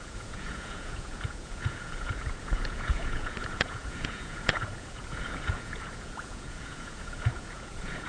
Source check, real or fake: fake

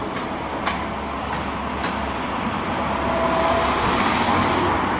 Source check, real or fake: real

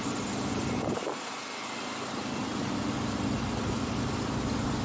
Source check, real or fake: real